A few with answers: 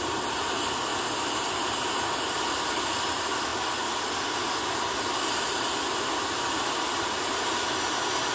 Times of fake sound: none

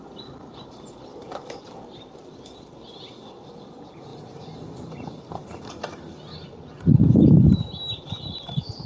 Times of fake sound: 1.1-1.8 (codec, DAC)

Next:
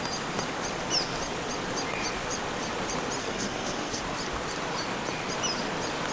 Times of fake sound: 3.2-4.0 (codec, SNAC)

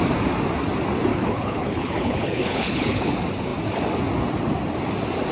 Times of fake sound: 1.1-3.1 (codec, HILCodec)

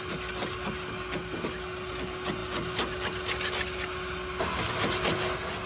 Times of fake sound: none